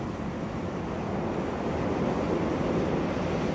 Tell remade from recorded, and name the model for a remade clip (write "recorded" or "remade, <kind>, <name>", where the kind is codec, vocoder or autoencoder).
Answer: recorded